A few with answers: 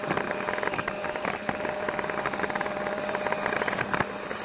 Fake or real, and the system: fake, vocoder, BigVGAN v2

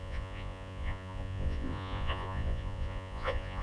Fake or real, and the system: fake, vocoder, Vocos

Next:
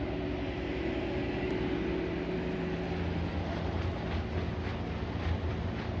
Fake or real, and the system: real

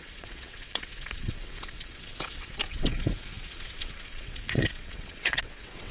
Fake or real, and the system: fake, vocoder, WaveNeXt